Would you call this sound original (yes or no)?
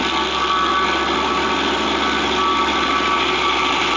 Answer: yes